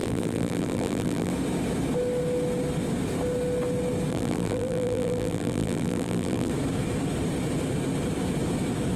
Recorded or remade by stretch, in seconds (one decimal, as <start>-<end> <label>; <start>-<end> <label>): 0.0-1.3 remade; 1.3-4.1 recorded; 4.1-6.5 remade; 6.5-9.0 recorded

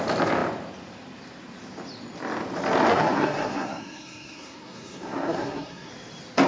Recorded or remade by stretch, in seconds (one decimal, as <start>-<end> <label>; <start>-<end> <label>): 0.0-2.9 recorded; 2.9-5.9 remade; 5.9-6.5 recorded

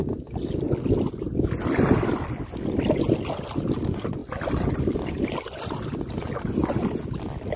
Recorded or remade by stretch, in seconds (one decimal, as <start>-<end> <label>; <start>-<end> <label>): 0.0-7.6 recorded

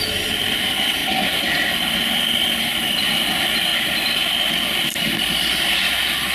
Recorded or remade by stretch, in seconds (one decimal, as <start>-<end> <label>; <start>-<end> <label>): 0.0-1.0 remade; 1.0-2.2 recorded; 2.2-3.7 remade; 3.7-5.2 recorded; 5.2-6.3 remade

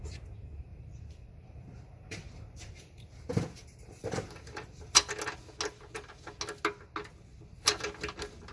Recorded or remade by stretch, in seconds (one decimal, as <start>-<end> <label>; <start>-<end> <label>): 0.0-0.7 recorded; 0.7-4.9 remade; 4.9-8.5 recorded

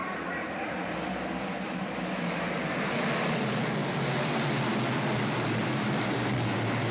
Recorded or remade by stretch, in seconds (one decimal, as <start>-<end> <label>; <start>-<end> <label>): 0.0-0.9 remade; 0.9-6.9 recorded